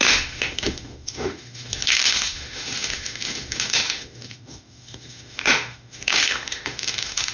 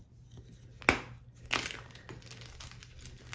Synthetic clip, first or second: first